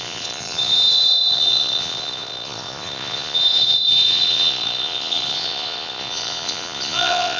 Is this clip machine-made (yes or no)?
yes